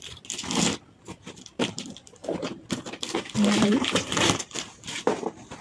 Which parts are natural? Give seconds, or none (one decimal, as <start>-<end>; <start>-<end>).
0.0-2.2